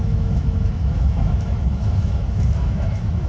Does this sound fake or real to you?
fake